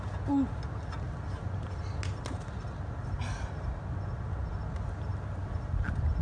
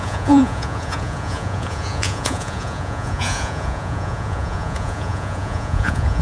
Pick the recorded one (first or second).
first